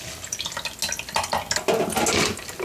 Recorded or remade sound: recorded